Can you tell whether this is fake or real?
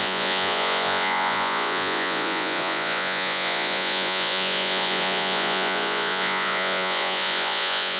fake